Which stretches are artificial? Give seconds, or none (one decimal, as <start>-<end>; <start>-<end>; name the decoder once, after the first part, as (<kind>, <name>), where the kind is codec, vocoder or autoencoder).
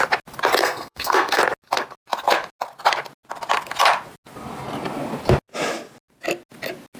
0.6-1.4 (codec, SNAC)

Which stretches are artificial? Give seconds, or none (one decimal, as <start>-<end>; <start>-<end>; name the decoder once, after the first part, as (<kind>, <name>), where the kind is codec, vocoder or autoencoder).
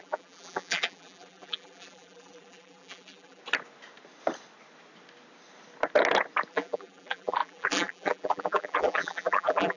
0.0-3.4 (vocoder, BigVGAN v2); 6.5-9.8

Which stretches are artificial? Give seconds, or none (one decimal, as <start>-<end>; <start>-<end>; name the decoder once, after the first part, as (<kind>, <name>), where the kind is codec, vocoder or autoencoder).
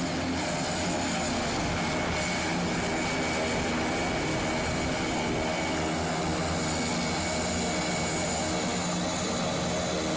none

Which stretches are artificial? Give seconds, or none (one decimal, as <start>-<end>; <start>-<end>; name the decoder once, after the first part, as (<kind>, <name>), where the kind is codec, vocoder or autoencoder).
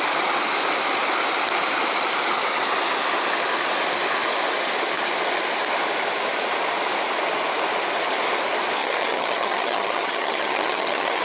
8.8-11.2 (vocoder, HiFi-GAN)